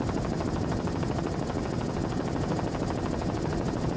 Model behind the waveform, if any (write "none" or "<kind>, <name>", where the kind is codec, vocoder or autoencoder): none